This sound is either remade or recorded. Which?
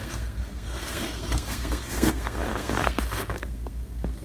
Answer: remade